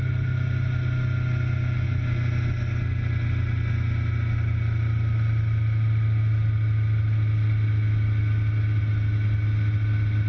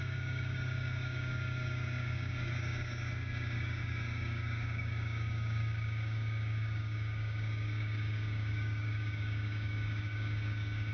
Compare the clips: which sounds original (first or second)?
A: first